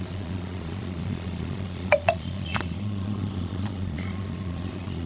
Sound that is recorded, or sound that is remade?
remade